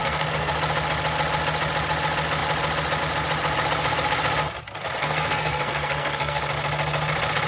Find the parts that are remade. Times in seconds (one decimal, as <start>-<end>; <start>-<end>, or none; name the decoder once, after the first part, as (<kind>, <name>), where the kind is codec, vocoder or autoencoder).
0.0-0.5 (codec, SNAC); 5.0-6.4